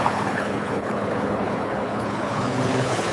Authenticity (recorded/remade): remade